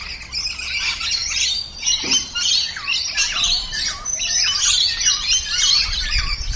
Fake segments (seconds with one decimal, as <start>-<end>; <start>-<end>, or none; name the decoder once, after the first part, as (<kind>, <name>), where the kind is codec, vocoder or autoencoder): none